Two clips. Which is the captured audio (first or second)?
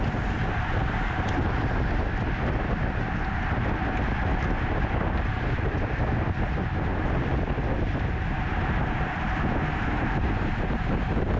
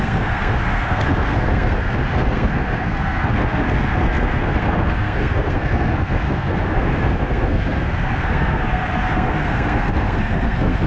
first